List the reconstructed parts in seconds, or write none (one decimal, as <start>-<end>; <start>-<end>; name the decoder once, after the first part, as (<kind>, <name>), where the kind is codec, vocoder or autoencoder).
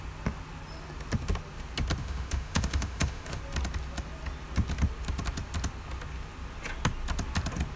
2.0-3.4 (autoencoder, DAC-VAE)